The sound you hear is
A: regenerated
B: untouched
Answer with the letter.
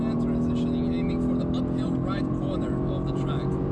B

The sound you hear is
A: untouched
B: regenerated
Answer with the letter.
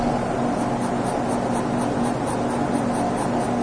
A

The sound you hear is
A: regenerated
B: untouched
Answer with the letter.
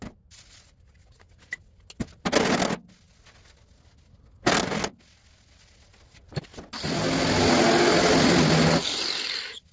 B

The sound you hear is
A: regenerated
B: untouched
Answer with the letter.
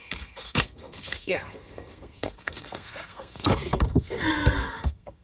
A